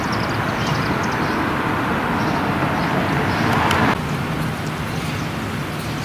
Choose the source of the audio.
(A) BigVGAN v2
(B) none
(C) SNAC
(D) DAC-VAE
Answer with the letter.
B